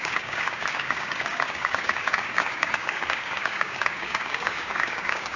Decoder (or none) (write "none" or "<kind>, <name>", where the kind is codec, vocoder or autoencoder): codec, DAC